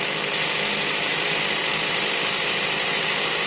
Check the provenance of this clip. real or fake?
real